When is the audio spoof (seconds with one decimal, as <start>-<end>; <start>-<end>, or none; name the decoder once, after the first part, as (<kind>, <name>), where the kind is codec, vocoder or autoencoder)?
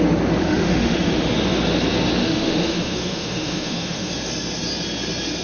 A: 0.4-1.3 (autoencoder, DAC-VAE); 2.2-4.1